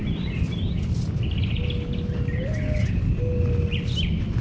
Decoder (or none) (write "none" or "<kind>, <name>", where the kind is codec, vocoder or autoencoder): none